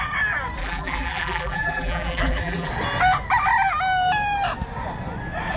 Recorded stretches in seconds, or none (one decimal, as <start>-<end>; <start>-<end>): 0.0-0.6; 2.7-5.6